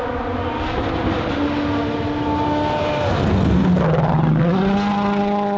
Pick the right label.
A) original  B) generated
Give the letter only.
A